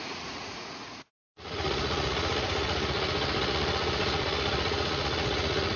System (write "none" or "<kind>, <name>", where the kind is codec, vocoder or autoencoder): vocoder, Vocos